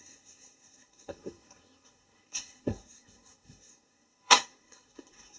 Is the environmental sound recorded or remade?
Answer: remade